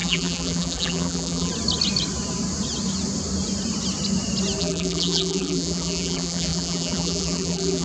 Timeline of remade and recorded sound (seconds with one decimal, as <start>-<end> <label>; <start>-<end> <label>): 0.0-1.5 remade; 1.5-4.6 recorded; 4.6-7.8 remade